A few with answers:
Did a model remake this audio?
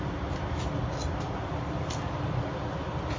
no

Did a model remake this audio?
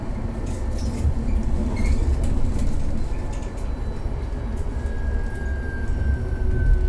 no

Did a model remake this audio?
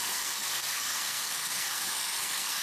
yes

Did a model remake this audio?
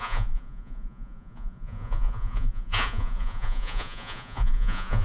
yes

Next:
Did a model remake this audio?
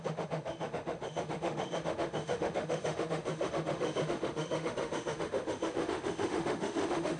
yes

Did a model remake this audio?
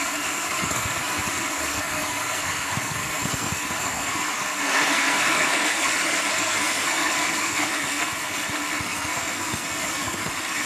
yes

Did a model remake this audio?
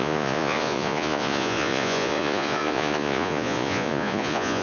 yes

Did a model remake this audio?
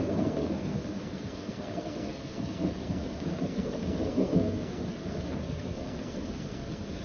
yes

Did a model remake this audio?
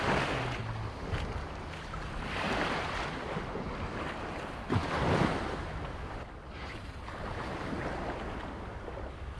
no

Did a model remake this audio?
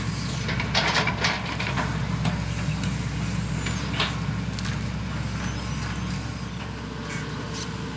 no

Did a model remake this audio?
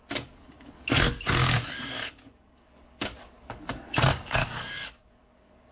yes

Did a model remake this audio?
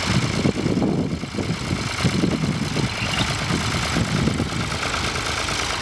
no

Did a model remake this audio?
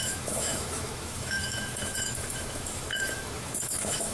yes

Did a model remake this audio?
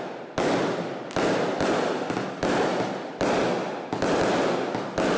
no